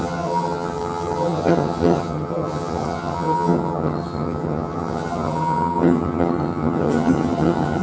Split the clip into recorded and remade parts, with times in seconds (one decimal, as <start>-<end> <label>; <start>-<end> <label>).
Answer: 0.0-7.8 remade